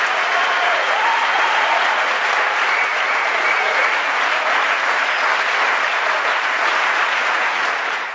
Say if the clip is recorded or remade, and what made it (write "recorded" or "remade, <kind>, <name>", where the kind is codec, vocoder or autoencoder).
remade, vocoder, Vocos